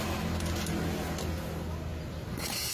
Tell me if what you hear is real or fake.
real